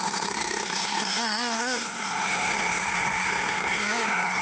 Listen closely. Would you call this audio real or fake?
fake